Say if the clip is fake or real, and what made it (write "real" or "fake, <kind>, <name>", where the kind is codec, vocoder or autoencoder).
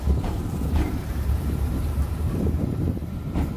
fake, vocoder, BigVGAN v2